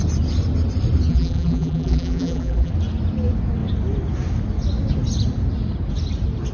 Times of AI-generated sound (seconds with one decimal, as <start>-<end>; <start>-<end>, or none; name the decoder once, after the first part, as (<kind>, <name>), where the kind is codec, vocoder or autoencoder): 1.1-2.7 (vocoder, BigVGAN v2)